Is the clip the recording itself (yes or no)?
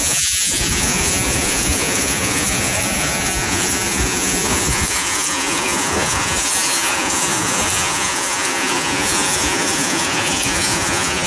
no